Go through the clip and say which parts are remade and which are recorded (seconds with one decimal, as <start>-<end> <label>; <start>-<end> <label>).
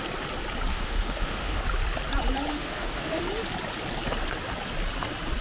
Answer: 0.0-0.7 recorded; 0.7-1.6 remade; 1.6-2.5 recorded; 2.5-3.2 remade; 3.2-5.4 recorded